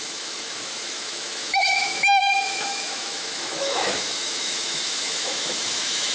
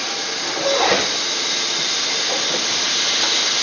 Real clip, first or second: second